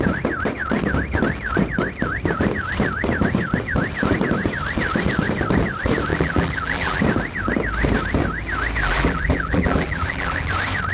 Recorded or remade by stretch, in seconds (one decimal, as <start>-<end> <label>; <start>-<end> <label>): 0.0-6.1 recorded; 6.1-7.0 remade; 7.0-8.8 recorded; 8.8-10.5 remade; 10.5-10.9 recorded